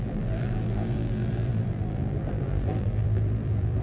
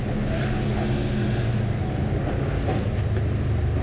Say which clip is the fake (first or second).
first